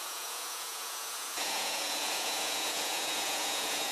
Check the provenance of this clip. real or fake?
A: fake